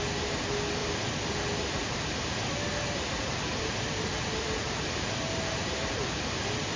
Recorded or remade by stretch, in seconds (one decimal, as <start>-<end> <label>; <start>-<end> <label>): 0.0-6.8 recorded